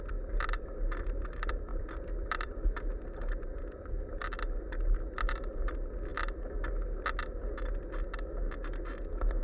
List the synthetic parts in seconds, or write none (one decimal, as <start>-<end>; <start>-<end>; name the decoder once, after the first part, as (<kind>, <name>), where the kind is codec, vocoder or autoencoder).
1.7-5.3 (vocoder, BigVGAN v2)